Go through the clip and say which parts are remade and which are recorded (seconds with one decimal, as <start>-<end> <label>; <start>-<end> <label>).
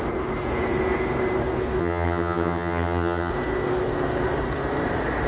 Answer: 0.0-1.8 recorded; 1.8-3.3 remade; 3.3-5.3 recorded